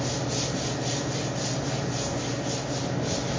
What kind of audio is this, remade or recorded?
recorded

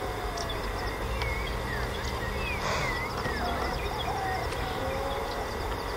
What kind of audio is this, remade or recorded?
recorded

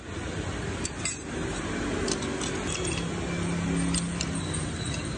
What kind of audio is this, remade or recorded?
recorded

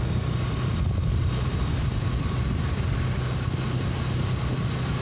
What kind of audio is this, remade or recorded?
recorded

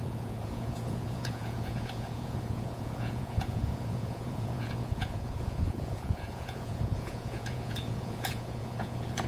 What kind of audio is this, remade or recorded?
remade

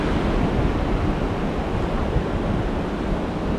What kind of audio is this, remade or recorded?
recorded